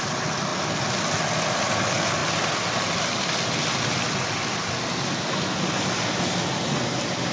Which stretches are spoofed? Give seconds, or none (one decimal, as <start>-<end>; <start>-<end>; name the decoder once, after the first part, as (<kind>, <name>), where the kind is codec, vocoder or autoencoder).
none